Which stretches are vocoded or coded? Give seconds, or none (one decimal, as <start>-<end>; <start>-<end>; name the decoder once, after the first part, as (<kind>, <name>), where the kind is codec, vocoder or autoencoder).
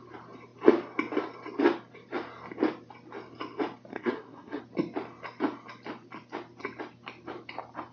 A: 3.9-4.6 (codec, SNAC)